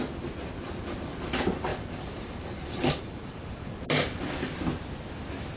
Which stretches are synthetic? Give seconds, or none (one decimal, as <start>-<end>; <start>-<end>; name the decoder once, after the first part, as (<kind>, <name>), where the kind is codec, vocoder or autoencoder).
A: 1.7-3.8 (vocoder, BigVGAN v2)